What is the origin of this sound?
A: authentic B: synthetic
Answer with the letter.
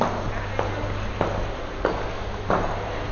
A